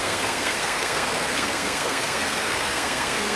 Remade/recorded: remade